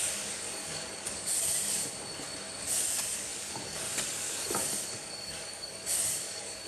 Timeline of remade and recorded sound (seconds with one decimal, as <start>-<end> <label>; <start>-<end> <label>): 0.0-1.8 remade; 1.8-2.6 recorded; 2.6-6.7 remade